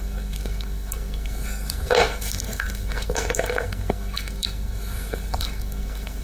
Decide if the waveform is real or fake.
fake